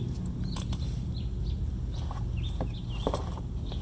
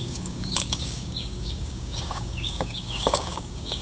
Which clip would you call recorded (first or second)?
first